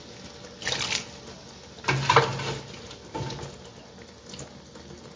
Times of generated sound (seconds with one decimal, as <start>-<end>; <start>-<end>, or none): none